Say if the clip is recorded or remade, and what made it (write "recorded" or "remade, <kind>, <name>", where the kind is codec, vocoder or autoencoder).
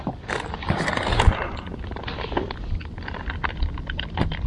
recorded